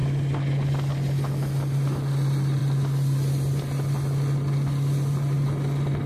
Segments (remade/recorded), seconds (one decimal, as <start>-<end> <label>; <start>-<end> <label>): 0.0-6.1 recorded